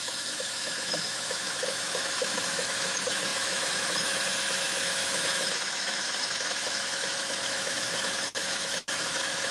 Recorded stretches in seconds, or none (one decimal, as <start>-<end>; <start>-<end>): none